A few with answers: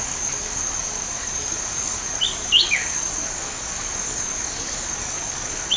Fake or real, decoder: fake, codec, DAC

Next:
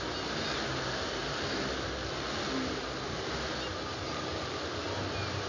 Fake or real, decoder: real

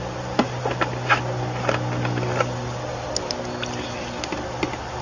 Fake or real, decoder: real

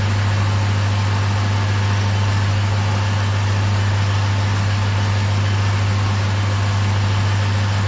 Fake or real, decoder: real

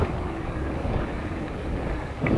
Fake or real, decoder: fake, codec, DAC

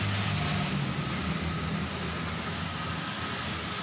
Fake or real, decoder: real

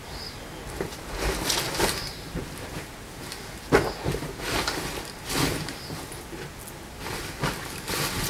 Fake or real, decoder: real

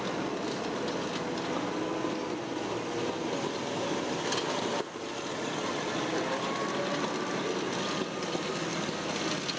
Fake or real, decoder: real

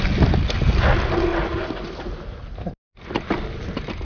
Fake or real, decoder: real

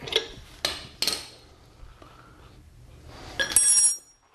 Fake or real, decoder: real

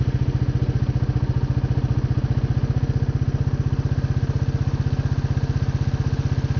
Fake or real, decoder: real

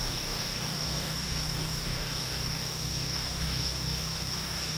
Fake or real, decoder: fake, codec, DAC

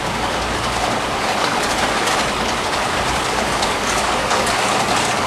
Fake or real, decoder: fake, codec, DAC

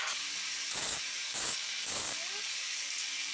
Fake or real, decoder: fake, codec, DAC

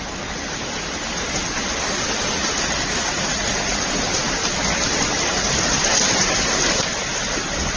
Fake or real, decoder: real